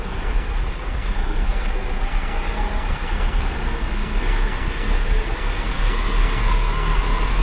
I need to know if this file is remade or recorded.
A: remade